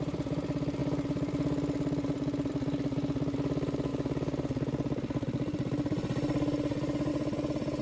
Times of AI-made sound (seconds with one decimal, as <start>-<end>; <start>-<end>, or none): none